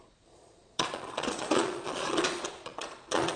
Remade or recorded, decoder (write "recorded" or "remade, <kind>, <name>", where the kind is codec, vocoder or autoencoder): remade, vocoder, Vocos